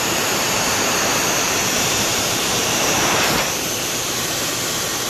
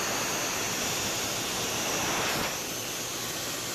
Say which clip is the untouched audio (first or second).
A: second